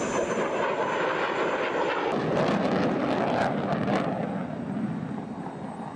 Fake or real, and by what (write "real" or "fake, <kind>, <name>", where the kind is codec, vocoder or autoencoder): real